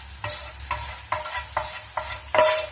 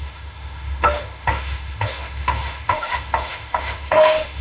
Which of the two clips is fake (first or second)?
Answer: second